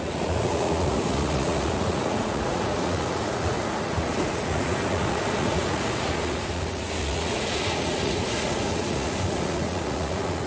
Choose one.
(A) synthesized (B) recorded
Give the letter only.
A